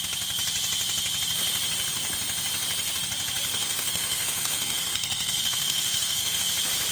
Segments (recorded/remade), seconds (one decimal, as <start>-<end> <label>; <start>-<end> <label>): 0.0-3.5 recorded; 3.5-6.4 remade; 6.4-6.9 recorded